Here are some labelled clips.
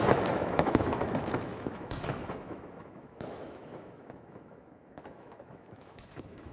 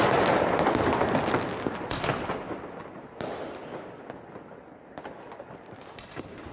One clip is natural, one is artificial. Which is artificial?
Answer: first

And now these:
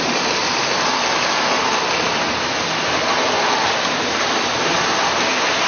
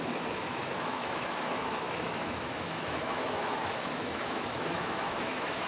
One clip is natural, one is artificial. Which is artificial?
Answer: second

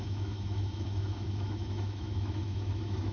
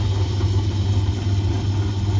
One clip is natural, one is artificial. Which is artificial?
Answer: first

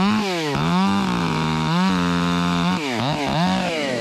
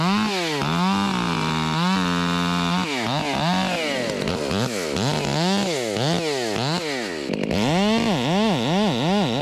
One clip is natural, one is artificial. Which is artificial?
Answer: first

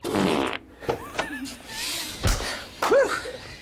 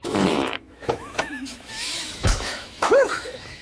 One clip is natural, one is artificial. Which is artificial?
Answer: second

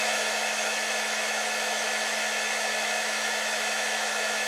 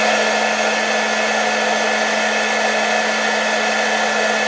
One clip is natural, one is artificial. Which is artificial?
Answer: first